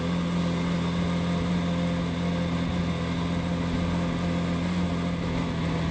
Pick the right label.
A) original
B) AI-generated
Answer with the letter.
A